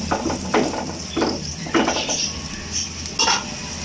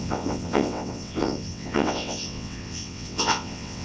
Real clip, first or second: first